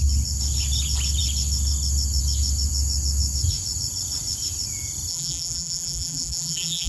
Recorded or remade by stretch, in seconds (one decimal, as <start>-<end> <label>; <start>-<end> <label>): 0.0-5.1 recorded; 5.1-6.9 remade